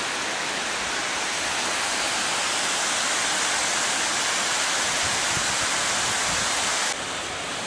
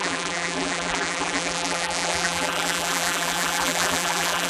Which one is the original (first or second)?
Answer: first